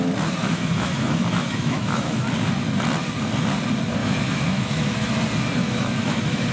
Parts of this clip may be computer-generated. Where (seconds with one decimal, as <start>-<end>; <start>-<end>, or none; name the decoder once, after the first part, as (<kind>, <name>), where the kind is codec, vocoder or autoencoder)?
0.4-2.2 (autoencoder, DAC-VAE); 4.0-5.1; 5.6-6.5